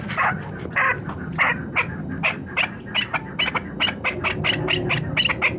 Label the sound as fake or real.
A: real